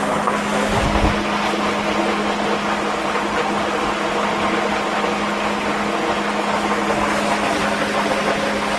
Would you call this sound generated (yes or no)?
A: no